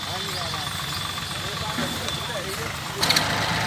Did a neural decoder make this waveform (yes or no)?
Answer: no